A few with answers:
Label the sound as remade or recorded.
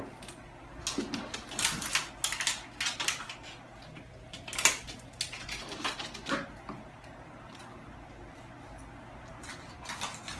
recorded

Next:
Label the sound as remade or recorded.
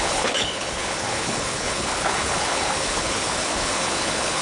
remade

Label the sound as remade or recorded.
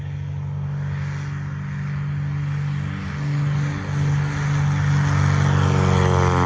recorded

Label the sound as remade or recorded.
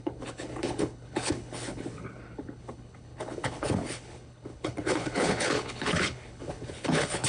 remade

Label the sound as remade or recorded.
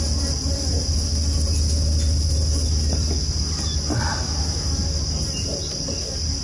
recorded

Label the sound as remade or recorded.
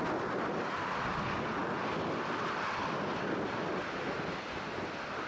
recorded